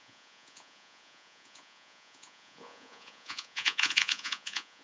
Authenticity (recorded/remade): remade